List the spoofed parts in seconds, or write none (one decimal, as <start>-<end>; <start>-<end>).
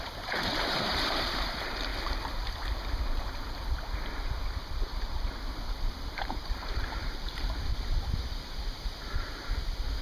0.0-1.9; 4.2-10.0